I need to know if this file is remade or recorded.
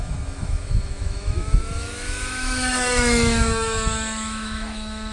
remade